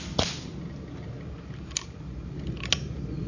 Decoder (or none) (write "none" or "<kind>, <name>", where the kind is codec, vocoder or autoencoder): none